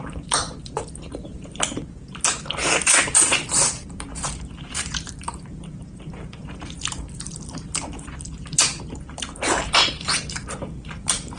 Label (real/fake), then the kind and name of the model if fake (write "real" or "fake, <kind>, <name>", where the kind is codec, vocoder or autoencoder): fake, vocoder, BigVGAN v2